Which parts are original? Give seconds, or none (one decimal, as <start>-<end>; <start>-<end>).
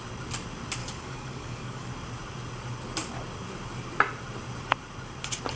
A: 0.0-0.8; 1.9-5.6